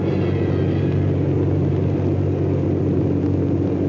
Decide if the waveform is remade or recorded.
recorded